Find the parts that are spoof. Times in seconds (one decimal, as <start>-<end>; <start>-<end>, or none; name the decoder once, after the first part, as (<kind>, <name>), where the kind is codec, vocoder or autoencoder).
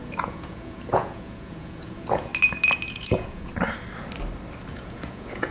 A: 0.0-2.3 (vocoder, Vocos); 2.9-3.5; 4.7-5.5